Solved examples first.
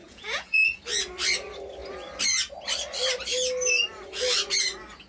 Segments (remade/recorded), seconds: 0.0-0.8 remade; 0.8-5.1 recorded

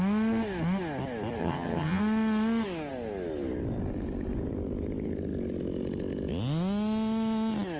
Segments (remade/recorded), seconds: 0.0-1.4 recorded; 1.4-2.0 remade; 2.0-7.8 recorded